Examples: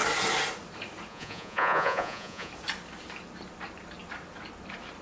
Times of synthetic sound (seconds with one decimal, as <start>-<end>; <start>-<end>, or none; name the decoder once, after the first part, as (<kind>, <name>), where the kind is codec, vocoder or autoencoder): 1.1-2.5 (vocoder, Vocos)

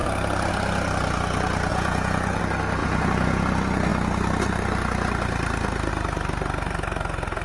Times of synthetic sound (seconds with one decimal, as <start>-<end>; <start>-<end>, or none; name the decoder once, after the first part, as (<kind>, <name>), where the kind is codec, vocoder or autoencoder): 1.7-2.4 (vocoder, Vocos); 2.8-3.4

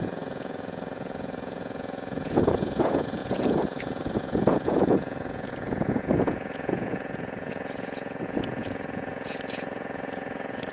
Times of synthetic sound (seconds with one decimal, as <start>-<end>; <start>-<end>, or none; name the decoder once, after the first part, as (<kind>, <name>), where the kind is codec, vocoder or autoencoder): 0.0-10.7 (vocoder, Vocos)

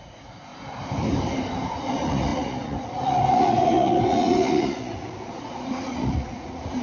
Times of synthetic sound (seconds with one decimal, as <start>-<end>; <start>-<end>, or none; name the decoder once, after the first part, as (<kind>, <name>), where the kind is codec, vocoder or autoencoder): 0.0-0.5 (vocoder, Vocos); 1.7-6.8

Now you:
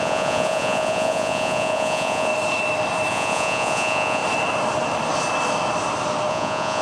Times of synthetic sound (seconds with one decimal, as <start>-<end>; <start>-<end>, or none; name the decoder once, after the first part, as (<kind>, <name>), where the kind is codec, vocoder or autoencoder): 0.0-2.3 (vocoder, Vocos); 3.1-4.2; 6.3-6.8

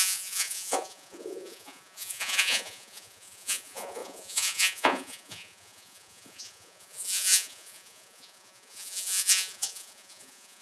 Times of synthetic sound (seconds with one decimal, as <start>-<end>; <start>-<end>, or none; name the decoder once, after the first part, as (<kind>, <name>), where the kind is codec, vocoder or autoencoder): 0.0-10.6 (vocoder, Vocos)